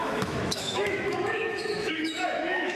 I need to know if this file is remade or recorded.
remade